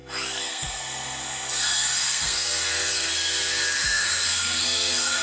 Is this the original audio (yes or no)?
no